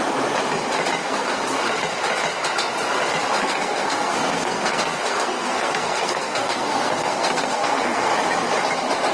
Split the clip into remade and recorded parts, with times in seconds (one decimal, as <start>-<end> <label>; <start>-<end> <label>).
0.0-1.0 recorded; 1.0-1.6 remade; 1.6-3.4 recorded; 3.4-8.1 remade; 8.1-9.1 recorded